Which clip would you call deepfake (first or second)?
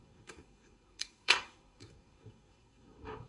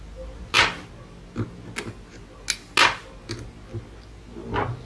first